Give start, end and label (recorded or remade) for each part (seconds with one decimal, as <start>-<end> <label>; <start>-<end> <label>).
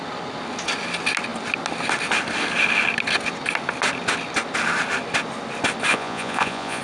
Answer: 0.0-5.9 recorded; 5.9-6.8 remade